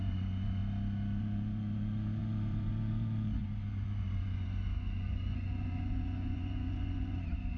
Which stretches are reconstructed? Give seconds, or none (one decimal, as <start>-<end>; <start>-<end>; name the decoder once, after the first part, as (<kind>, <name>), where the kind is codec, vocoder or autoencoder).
0.0-0.6 (vocoder, Vocos); 1.2-7.6

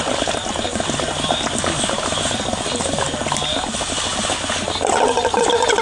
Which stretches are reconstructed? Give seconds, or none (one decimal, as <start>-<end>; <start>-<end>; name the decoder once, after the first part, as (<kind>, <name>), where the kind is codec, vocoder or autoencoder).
none